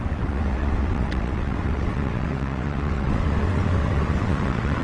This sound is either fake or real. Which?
fake